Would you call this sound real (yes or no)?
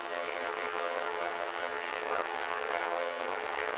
no